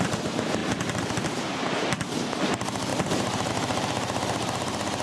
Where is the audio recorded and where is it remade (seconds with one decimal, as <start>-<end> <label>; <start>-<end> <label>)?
0.0-5.0 recorded